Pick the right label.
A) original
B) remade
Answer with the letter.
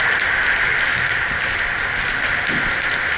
A